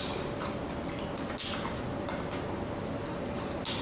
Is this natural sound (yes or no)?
no